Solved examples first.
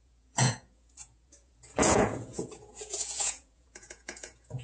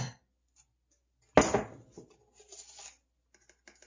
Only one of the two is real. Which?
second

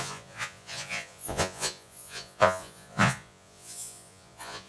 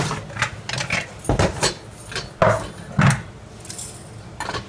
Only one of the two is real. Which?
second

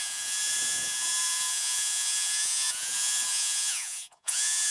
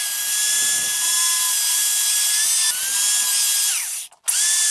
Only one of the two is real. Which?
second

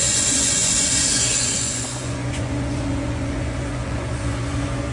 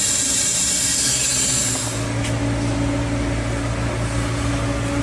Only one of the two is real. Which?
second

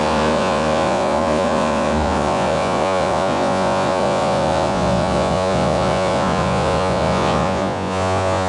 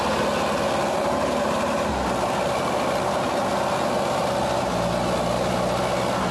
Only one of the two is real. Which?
second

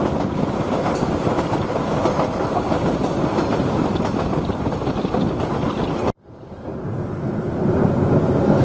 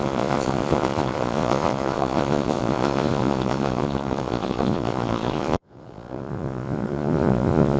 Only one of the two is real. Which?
first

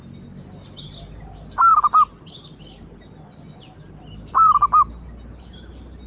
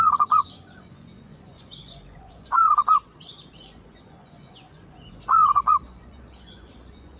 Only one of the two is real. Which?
first